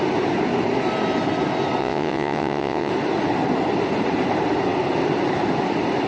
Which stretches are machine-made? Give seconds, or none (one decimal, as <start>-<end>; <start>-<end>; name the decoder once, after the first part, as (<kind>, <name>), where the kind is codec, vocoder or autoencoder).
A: 1.8-2.9 (vocoder, WaveNeXt)